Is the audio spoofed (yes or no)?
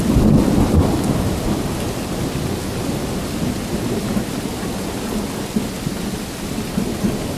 no